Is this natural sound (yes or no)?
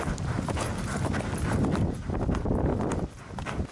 yes